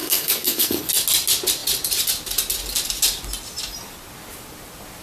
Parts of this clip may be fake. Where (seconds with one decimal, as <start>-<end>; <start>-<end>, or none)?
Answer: 0.0-0.9